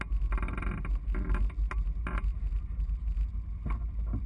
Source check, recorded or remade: recorded